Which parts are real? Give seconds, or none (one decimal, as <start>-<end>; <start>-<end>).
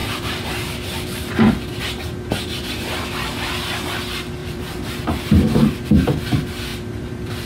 1.8-4.4; 4.9-6.7